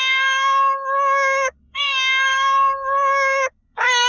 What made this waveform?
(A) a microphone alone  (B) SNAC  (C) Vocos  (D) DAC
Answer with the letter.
D